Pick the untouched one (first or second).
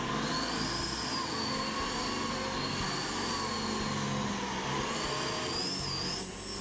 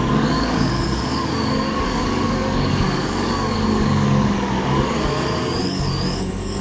first